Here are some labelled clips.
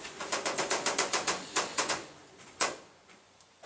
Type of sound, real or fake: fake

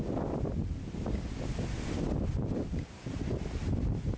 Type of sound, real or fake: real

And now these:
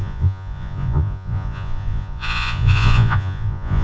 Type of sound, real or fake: fake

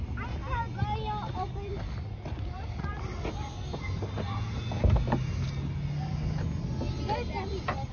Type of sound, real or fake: real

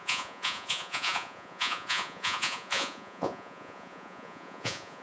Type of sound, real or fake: fake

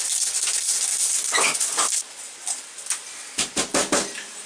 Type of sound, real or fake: real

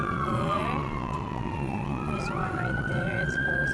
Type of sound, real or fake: fake